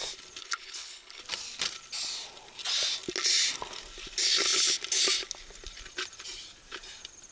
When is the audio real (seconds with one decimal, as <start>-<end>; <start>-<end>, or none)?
0.0-0.4; 1.2-7.3